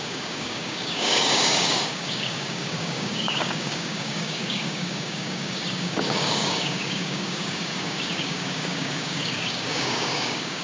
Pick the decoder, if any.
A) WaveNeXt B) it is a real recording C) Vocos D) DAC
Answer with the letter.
D